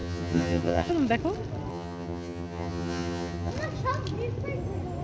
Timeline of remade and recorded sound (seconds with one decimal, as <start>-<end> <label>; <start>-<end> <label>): 0.0-0.9 remade; 0.9-1.7 recorded; 1.7-3.5 remade; 3.5-5.0 recorded